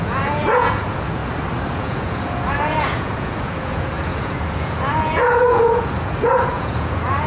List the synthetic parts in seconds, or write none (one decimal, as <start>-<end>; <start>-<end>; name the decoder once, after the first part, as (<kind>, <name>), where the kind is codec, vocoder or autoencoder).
0.0-1.2 (vocoder, Vocos); 1.7-7.3